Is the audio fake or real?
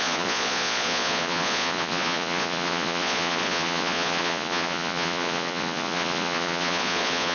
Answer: fake